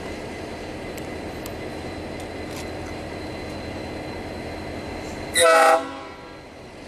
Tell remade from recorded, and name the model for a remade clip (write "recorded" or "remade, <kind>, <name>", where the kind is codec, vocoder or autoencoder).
recorded